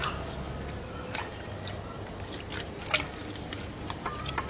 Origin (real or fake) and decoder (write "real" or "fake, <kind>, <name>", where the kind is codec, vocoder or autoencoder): real